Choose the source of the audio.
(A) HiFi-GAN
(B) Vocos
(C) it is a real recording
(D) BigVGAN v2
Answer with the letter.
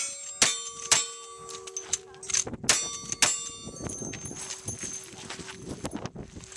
C